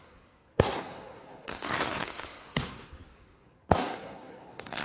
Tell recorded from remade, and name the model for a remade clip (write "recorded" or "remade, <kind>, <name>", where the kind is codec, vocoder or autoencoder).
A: remade, codec, SNAC